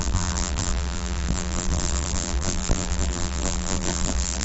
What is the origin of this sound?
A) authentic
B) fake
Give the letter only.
B